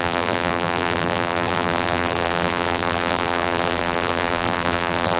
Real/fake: fake